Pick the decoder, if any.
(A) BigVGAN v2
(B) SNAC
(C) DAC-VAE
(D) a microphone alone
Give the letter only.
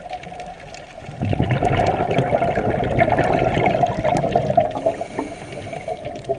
D